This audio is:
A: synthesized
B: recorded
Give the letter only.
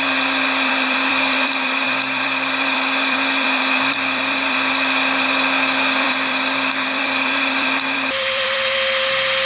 A